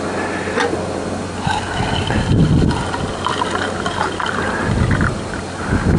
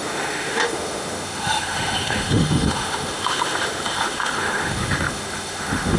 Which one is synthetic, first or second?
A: second